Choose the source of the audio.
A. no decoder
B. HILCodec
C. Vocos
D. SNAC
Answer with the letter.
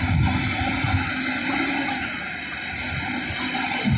A